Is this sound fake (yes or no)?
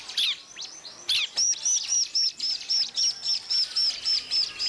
no